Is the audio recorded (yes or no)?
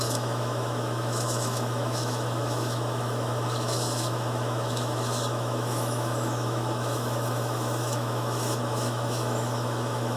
no